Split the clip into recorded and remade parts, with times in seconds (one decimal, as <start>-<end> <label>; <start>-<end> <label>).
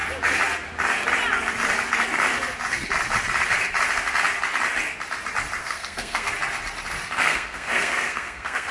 0.0-5.6 recorded; 5.6-6.3 remade; 6.3-7.2 recorded; 7.2-8.7 remade